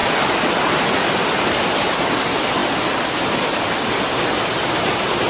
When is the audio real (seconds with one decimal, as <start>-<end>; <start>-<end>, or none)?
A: 0.0-5.3